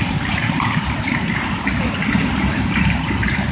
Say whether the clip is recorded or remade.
remade